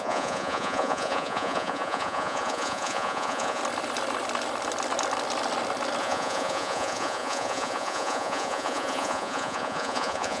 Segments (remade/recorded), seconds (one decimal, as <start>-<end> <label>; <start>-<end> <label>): 0.0-3.6 remade; 3.6-6.0 recorded; 6.0-10.4 remade